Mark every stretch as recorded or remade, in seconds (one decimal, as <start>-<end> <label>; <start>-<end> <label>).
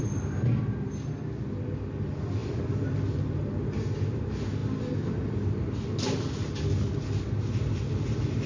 0.0-2.4 recorded; 2.4-3.0 remade; 3.0-8.5 recorded